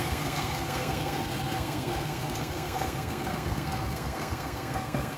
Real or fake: fake